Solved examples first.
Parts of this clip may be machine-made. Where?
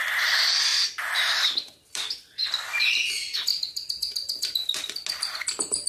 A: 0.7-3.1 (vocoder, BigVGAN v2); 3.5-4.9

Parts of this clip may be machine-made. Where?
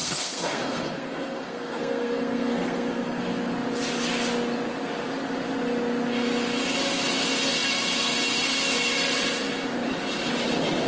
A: 0.0-3.2 (codec, SNAC)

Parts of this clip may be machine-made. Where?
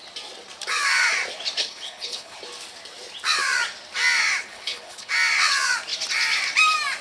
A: 1.6-2.4 (codec, HILCodec); 4.4-5.1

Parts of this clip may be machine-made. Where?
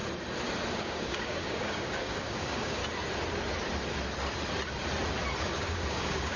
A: 0.7-2.8 (codec, DAC); 5.4-6.4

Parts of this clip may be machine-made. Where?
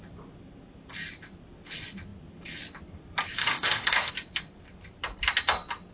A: 3.4-4.1 (autoencoder, DAC-VAE)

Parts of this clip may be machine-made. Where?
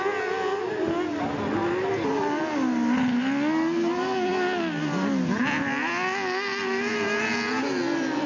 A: none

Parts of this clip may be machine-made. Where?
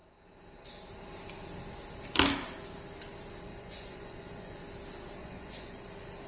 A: 3.5-4.6 (vocoder, Vocos); 5.2-5.8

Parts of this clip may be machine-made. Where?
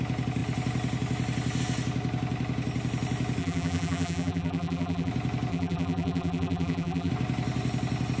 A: 3.4-5.1 (vocoder, BigVGAN v2); 5.5-7.1